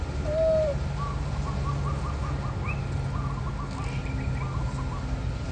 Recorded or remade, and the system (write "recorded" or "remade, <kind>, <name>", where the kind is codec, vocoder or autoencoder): recorded